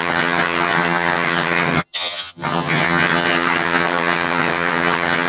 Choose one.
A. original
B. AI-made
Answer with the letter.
B